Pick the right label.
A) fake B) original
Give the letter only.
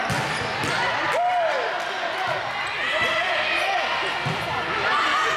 B